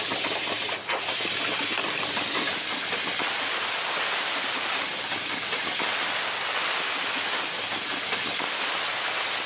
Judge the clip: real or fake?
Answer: real